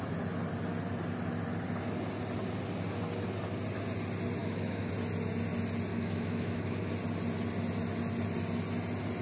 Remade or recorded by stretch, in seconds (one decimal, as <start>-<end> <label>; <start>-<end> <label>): 0.0-4.4 recorded; 4.4-4.9 remade; 4.9-5.9 recorded; 5.9-6.9 remade; 6.9-9.2 recorded